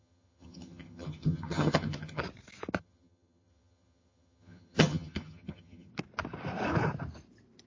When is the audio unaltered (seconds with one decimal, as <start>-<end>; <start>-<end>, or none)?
2.2-2.8; 5.9-7.7